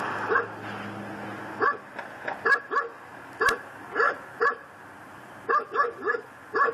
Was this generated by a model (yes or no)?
no